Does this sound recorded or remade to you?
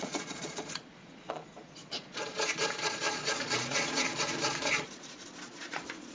remade